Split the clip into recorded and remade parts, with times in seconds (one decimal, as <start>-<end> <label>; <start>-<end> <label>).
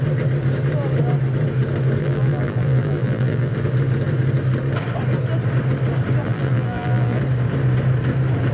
0.0-2.0 recorded; 2.0-3.5 remade; 3.5-6.2 recorded; 6.2-7.2 remade; 7.2-8.5 recorded